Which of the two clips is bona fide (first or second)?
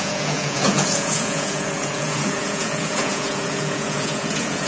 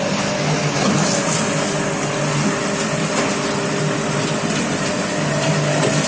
second